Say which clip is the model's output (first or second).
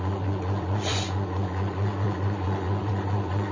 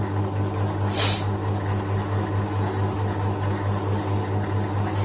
first